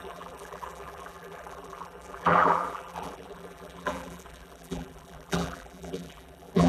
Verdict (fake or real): fake